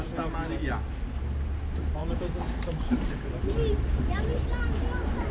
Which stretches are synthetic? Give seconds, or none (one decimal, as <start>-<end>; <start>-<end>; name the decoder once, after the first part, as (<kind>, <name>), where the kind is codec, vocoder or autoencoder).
2.0-3.4 (vocoder, BigVGAN v2)